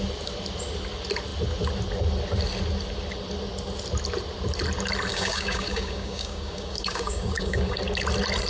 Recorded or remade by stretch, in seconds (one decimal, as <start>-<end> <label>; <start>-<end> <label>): 0.0-5.1 recorded; 5.1-7.8 remade; 7.8-8.5 recorded